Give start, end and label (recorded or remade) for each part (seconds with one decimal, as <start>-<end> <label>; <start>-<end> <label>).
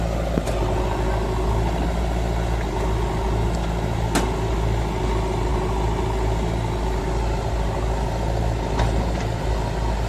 0.0-10.1 recorded